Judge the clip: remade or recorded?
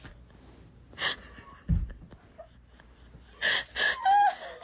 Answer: recorded